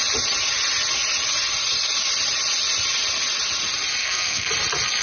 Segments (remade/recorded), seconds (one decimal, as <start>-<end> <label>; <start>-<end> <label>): 0.0-4.0 recorded; 4.0-4.5 remade; 4.5-5.0 recorded